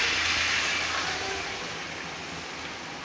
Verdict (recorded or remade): recorded